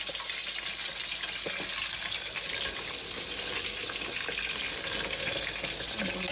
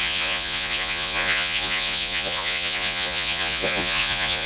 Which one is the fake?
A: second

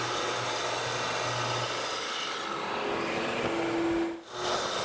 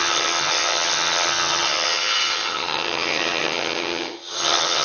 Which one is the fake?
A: second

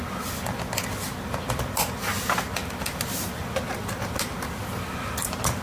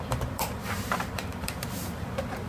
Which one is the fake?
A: second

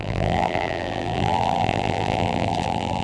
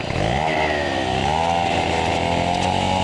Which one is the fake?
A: first